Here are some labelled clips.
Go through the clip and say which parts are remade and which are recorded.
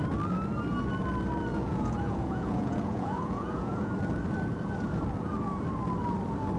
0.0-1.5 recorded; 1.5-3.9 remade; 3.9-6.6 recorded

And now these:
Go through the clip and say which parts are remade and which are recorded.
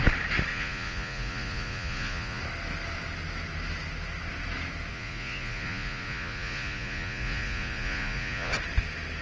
0.0-0.5 recorded; 0.5-2.4 remade; 2.4-4.9 recorded; 4.9-8.5 remade; 8.5-9.2 recorded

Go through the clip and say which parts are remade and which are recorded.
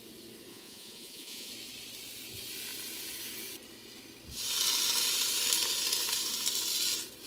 0.0-0.5 recorded; 0.5-1.5 remade; 1.5-7.3 recorded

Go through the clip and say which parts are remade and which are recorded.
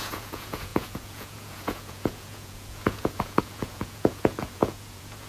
0.0-5.3 remade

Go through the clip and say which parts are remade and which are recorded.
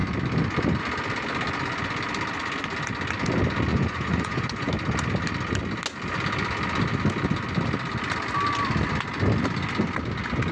0.0-3.7 recorded; 3.7-4.7 remade; 4.7-10.5 recorded